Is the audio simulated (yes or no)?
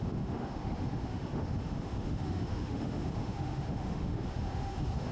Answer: yes